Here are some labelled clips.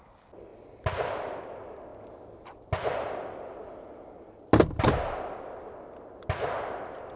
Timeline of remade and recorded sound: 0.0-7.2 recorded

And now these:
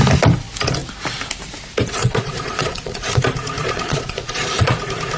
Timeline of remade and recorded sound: 0.0-2.0 recorded; 2.0-3.1 remade; 3.1-3.6 recorded; 3.6-4.8 remade; 4.8-5.2 recorded

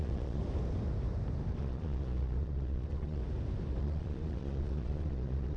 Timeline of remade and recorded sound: 0.0-0.4 remade; 0.4-1.6 recorded; 1.6-3.2 remade; 3.2-3.8 recorded; 3.8-5.6 remade